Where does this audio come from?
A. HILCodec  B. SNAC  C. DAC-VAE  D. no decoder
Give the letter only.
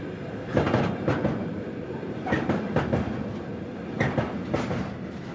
D